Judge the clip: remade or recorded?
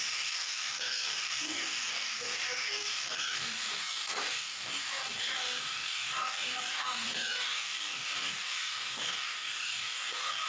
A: remade